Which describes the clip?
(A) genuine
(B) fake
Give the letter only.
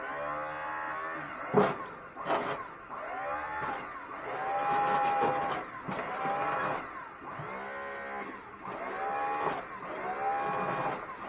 A